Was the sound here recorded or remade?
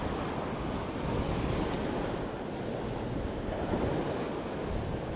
recorded